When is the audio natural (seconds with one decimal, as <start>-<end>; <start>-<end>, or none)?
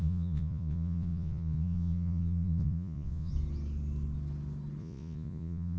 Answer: 3.3-4.8